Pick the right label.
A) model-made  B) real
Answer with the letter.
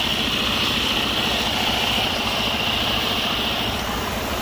B